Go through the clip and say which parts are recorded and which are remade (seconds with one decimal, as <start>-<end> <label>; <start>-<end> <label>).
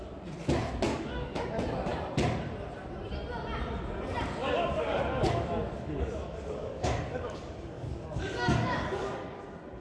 0.0-0.9 recorded; 0.9-1.5 remade; 1.5-4.4 recorded; 4.4-9.4 remade; 9.4-9.8 recorded